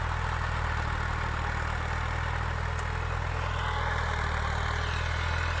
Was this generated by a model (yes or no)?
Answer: no